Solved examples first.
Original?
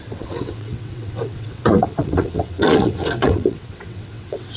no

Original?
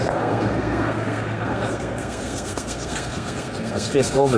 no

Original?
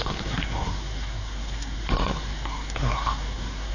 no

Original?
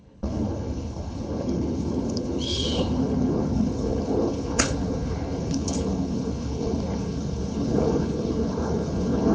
no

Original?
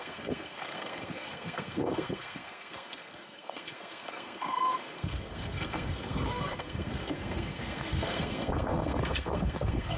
no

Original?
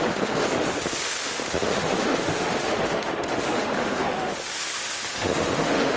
no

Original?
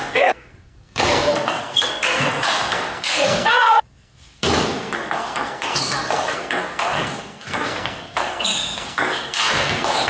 no